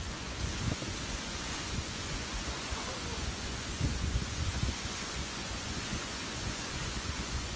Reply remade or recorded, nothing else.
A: remade